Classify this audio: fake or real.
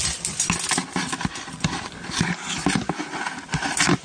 real